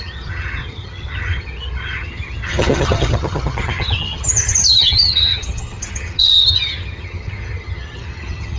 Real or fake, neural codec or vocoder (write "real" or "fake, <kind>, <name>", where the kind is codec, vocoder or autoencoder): fake, vocoder, HiFi-GAN